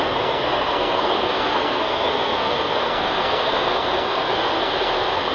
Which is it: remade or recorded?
remade